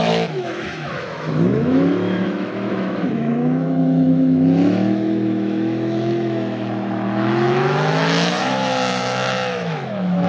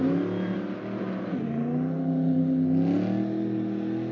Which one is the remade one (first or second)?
first